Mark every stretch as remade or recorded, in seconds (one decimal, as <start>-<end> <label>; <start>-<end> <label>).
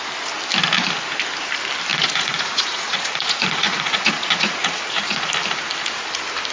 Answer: 0.0-1.9 recorded; 1.9-5.3 remade; 5.3-6.5 recorded